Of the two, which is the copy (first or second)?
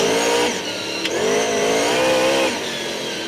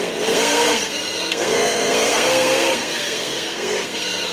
second